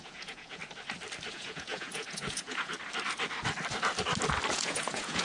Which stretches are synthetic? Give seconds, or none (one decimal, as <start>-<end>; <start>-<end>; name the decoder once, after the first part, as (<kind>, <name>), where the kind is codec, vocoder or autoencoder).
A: 0.0-0.6 (vocoder, Vocos); 1.3-2.7; 4.5-5.2